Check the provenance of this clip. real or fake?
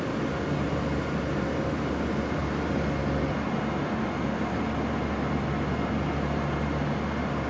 real